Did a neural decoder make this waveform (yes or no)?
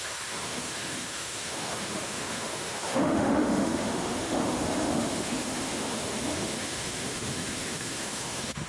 yes